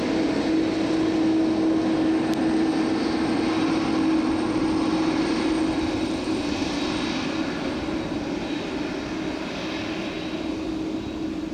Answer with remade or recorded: recorded